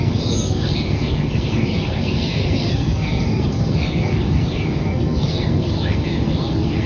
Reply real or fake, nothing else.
fake